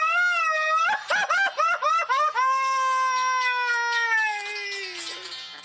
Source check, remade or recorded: recorded